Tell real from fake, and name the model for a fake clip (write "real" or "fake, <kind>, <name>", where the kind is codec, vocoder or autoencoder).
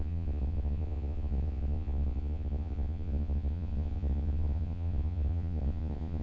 fake, vocoder, Vocos